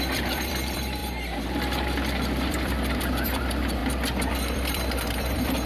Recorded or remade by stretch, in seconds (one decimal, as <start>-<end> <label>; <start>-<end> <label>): 0.0-1.0 remade; 1.0-2.5 recorded; 2.5-3.8 remade; 3.8-4.3 recorded; 4.3-5.7 remade